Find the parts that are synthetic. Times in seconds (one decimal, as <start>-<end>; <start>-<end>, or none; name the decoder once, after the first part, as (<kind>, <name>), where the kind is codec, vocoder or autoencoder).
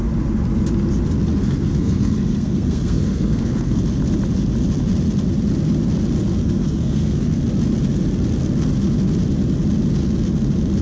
1.4-3.8 (codec, SNAC); 6.4-7.4